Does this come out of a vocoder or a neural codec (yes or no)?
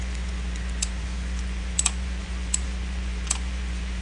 yes